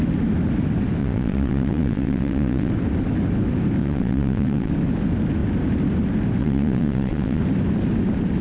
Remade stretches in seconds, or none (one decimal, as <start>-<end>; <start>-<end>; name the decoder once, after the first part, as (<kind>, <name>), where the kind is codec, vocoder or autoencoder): 1.0-2.7 (vocoder, WaveNeXt); 3.8-4.7; 6.4-7.4

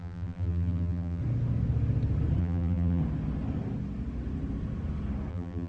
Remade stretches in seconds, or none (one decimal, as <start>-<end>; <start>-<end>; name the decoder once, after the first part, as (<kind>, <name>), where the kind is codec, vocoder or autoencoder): 0.0-1.2 (vocoder, BigVGAN v2); 2.4-3.0; 5.3-5.7